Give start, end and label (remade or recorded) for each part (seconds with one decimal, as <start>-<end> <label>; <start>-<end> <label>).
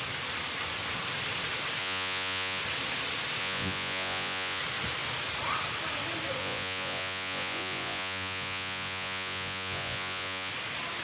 0.0-1.8 recorded; 1.8-2.6 remade; 2.6-3.4 recorded; 3.4-4.6 remade; 4.6-6.4 recorded; 6.4-10.5 remade; 10.5-11.0 recorded